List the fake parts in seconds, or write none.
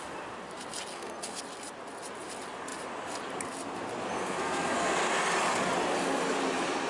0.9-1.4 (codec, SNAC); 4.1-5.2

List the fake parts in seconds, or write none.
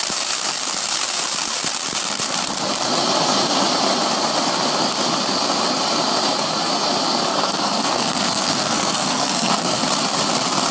7.3-9.8 (codec, SNAC)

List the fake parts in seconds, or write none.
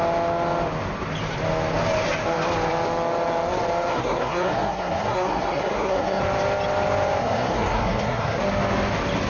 3.9-6.2 (codec, SNAC); 7.2-8.4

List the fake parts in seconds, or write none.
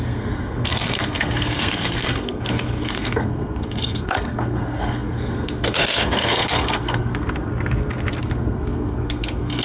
0.0-7.5 (codec, SNAC); 8.2-9.6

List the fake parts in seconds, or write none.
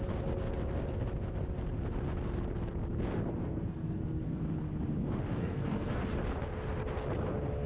3.4-4.4 (codec, SNAC); 5.4-6.0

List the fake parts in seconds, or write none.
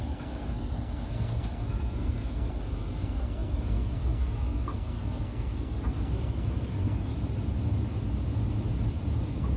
0.0-7.1 (codec, SNAC); 9.2-9.6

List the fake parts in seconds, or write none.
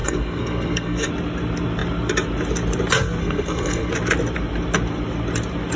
0.0-1.1 (codec, SNAC); 3.2-3.9